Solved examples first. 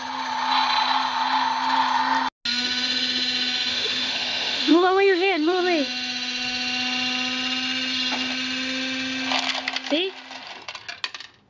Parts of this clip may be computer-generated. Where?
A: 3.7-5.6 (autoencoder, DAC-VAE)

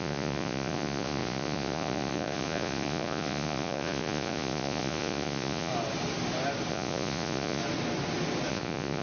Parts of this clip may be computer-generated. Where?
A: 0.0-5.7 (vocoder, Vocos); 6.7-7.6; 8.5-9.0

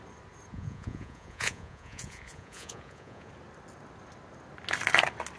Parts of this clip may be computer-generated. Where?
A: 0.5-3.3 (vocoder, Vocos)

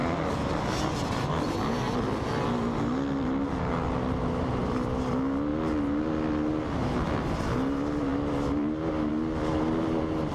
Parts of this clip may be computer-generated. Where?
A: none

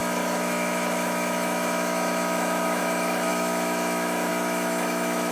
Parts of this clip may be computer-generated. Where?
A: 0.0-5.3 (autoencoder, DAC-VAE)

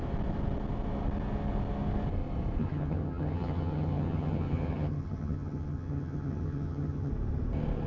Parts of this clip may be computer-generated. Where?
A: 2.6-7.1 (vocoder, HiFi-GAN)

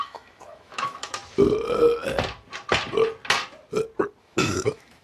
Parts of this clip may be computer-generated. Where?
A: 0.0-1.2 (autoencoder, DAC-VAE); 4.2-5.0